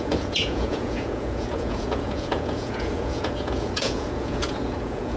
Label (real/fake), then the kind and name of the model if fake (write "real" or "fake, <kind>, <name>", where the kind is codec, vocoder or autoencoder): fake, vocoder, Vocos